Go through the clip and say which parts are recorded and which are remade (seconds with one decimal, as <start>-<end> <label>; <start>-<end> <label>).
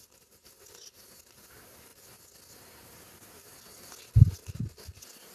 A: 0.0-5.3 recorded